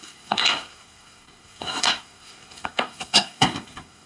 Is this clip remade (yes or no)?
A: yes